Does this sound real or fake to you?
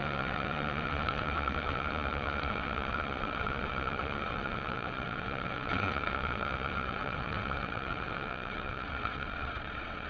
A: fake